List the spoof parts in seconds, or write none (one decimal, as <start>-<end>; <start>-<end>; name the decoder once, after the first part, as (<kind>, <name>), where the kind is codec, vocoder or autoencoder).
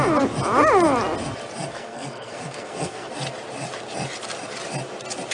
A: 1.7-3.1 (codec, SNAC)